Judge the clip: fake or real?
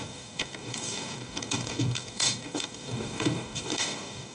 fake